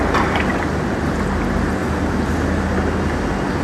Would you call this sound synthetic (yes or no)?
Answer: no